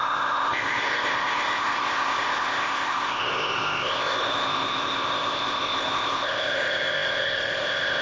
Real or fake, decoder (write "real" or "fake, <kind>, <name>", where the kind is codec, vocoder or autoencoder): fake, codec, ZipCodec